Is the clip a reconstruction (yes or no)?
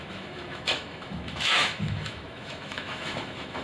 yes